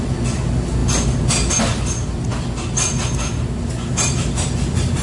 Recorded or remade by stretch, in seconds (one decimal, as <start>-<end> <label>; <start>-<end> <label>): 0.0-5.0 recorded